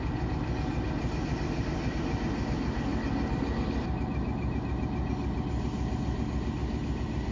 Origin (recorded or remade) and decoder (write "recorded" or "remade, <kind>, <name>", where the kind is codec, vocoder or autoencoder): recorded